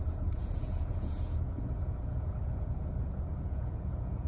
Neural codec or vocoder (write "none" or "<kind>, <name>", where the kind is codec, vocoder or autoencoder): vocoder, Vocos